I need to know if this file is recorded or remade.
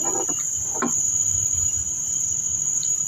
remade